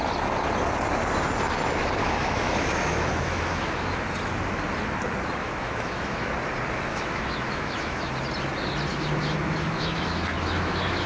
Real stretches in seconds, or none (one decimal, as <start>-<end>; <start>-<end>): 0.0-2.0; 4.0-5.4; 6.3-6.9; 8.1-8.9